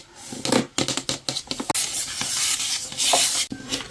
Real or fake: real